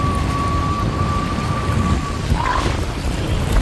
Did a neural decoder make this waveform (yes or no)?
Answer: no